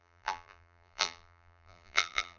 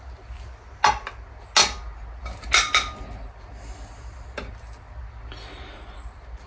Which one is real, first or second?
second